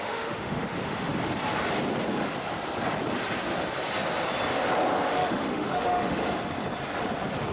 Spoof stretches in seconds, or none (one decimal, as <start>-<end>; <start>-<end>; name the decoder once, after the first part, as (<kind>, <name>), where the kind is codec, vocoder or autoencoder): 0.0-1.1 (autoencoder, DAC-VAE); 5.1-6.2